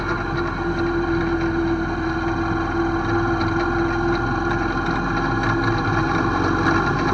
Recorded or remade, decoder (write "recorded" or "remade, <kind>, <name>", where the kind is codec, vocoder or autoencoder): recorded